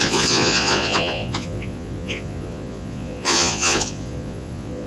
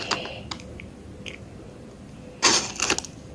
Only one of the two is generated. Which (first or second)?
first